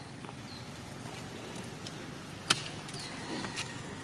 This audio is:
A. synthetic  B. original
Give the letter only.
B